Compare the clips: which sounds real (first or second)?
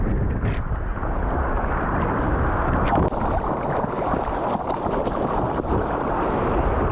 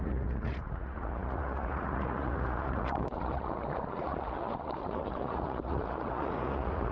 first